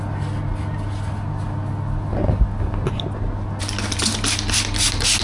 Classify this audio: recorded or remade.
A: recorded